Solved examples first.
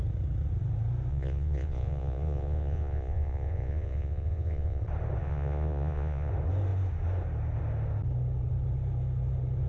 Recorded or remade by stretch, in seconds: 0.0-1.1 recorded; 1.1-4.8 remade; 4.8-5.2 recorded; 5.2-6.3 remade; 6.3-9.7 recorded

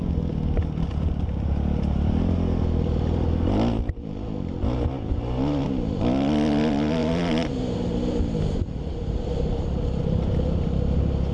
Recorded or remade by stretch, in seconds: 0.0-11.3 recorded

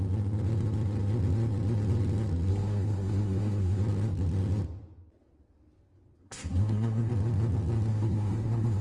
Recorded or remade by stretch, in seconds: 0.0-2.5 recorded; 2.5-3.8 remade; 3.8-6.2 recorded; 6.2-7.1 remade; 7.1-7.9 recorded; 7.9-8.8 remade